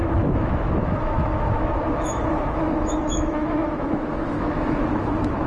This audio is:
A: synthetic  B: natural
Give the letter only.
A